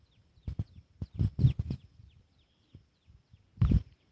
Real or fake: real